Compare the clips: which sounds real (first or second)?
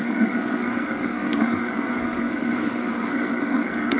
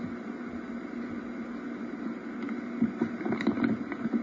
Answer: second